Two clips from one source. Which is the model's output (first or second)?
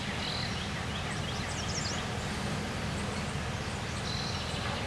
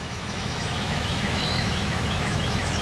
second